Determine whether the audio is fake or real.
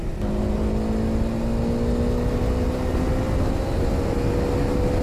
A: real